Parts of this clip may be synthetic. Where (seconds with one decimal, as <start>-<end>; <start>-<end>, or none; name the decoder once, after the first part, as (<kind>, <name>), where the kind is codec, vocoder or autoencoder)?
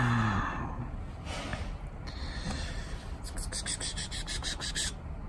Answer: 1.5-4.7 (vocoder, BigVGAN v2)